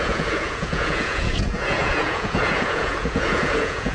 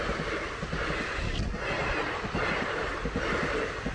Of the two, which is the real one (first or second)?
second